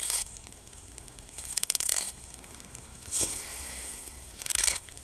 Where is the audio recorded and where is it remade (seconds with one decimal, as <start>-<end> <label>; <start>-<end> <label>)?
0.0-5.0 remade